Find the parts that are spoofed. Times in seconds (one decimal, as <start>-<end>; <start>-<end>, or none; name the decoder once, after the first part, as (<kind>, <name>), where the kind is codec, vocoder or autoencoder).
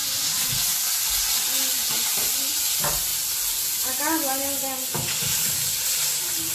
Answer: 0.0-0.5 (vocoder, BigVGAN v2)